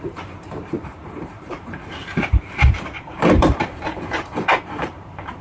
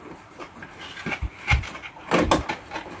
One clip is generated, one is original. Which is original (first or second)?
second